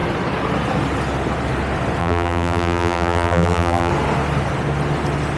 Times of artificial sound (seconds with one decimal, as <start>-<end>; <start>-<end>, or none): 2.0-3.9